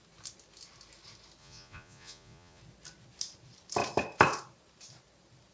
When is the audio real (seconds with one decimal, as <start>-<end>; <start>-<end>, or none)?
0.0-1.4; 2.6-5.5